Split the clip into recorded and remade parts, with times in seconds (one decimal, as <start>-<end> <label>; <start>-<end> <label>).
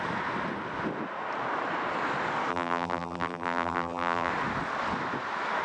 0.0-2.5 recorded; 2.5-4.3 remade; 4.3-5.6 recorded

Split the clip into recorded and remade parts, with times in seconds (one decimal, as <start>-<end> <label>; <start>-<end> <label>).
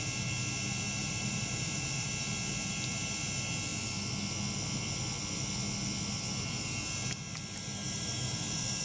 0.0-1.0 recorded; 1.0-2.1 remade; 2.1-7.8 recorded; 7.8-8.8 remade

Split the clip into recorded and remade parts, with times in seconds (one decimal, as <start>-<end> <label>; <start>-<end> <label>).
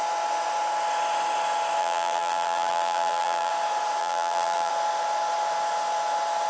0.0-1.8 recorded; 1.8-3.5 remade; 3.5-4.0 recorded; 4.0-4.7 remade; 4.7-6.5 recorded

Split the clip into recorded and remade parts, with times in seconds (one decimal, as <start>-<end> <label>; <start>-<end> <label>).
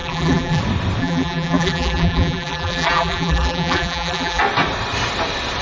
0.0-0.6 remade; 0.6-1.0 recorded; 1.0-4.4 remade; 4.4-5.6 recorded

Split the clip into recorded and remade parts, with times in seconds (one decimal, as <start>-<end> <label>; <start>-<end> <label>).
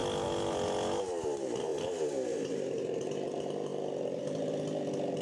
0.0-1.0 recorded; 1.0-3.7 remade; 3.7-4.2 recorded; 4.2-5.2 remade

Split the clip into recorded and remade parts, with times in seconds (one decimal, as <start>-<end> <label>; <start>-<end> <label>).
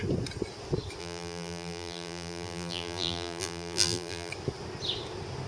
0.0-1.0 recorded; 1.0-4.3 remade; 4.3-5.5 recorded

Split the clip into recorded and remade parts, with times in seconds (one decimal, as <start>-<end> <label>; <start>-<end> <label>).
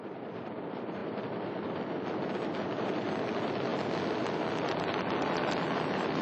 0.0-3.7 remade; 3.7-4.8 recorded; 4.8-6.2 remade